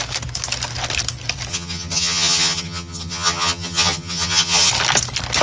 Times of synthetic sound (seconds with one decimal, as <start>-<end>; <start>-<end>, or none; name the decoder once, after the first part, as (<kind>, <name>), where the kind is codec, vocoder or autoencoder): 1.5-4.7 (vocoder, HiFi-GAN)